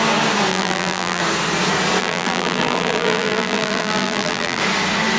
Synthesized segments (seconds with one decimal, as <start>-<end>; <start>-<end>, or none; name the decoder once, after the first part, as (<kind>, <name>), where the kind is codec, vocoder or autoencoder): 0.5-1.2 (vocoder, BigVGAN v2); 2.0-4.6